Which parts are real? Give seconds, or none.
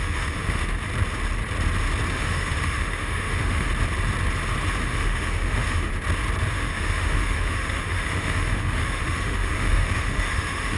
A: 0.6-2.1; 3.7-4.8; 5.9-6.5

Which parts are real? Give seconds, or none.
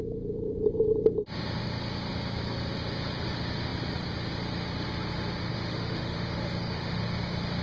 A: 0.0-5.5; 7.0-7.6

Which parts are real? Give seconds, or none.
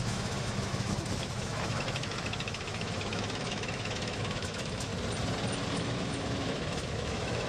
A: 4.9-5.7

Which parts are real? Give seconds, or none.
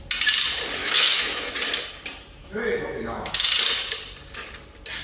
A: 0.0-0.8; 1.5-2.4; 3.5-5.0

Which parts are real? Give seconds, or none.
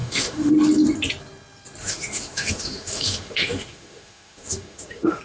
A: 0.5-1.8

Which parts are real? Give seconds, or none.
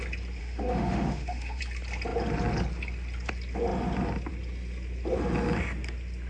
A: 0.0-0.4; 1.6-6.3